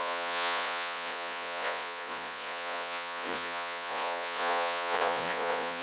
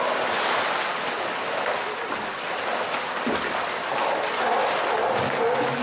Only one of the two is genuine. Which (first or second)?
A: second